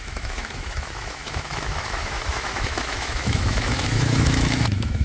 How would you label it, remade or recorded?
remade